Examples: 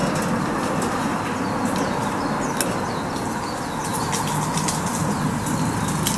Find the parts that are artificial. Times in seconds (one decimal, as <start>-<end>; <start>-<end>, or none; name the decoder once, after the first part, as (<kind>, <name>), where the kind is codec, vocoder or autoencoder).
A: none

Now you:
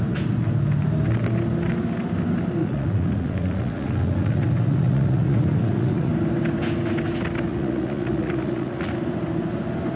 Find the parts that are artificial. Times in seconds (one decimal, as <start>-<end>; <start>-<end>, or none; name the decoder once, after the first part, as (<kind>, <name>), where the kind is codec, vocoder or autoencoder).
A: 2.6-6.1 (vocoder, Vocos); 7.5-8.9

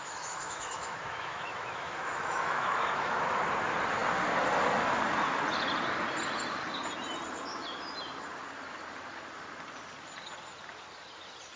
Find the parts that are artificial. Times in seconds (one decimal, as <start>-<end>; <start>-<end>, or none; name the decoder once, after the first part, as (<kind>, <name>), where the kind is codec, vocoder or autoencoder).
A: 0.0-3.4 (autoencoder, DAC-VAE)

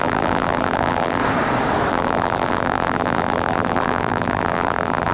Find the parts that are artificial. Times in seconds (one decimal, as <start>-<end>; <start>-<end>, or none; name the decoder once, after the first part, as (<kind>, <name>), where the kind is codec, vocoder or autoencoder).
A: 0.0-1.2 (vocoder, BigVGAN v2); 1.9-5.1

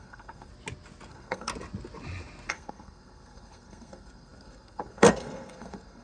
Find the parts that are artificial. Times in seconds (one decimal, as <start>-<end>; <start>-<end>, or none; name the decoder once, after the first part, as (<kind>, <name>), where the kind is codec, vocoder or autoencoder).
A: 0.0-0.5 (codec, SNAC); 1.1-1.5; 2.5-6.0